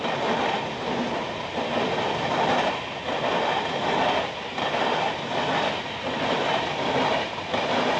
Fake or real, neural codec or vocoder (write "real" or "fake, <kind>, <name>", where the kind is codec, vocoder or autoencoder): real